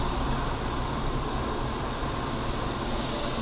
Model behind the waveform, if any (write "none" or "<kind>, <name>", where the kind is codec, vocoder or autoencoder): none